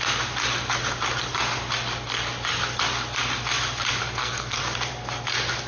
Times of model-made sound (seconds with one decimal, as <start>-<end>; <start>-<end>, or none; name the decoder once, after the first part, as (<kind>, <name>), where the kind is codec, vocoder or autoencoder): 4.0-4.6 (codec, SNAC)